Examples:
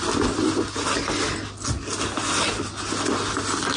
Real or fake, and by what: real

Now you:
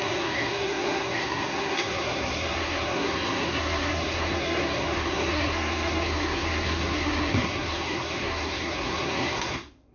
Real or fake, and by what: fake, codec, SNAC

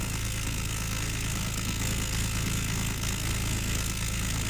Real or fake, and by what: fake, codec, SNAC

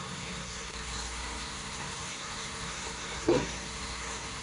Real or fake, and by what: fake, codec, SNAC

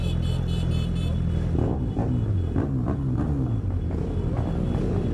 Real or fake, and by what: real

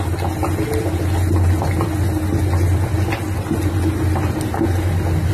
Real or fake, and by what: real